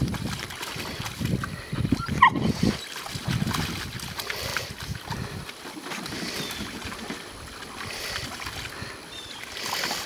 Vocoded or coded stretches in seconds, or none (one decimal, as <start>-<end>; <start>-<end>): 4.5-5.5